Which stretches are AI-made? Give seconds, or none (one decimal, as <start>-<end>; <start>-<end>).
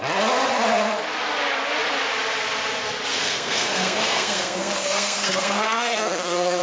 3.1-6.6